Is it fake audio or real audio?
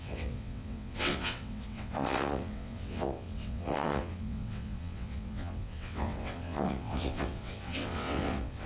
fake